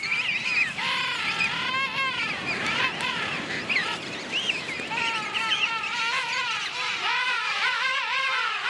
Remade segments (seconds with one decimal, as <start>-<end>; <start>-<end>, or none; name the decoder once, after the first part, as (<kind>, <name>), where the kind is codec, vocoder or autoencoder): 0.0-8.7 (vocoder, BigVGAN v2)